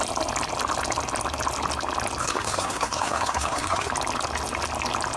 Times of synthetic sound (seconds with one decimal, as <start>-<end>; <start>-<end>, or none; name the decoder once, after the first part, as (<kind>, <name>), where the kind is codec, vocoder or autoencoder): 2.2-3.9 (codec, SNAC)